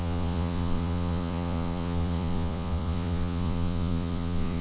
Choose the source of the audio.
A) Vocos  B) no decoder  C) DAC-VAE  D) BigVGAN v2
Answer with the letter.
A